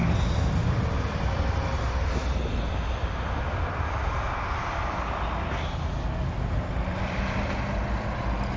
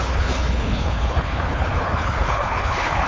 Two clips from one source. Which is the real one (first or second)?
first